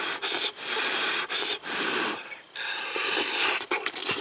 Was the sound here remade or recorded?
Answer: remade